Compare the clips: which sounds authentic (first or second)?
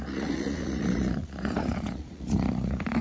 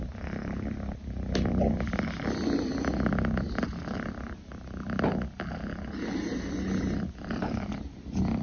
second